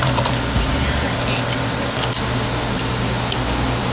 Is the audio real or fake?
real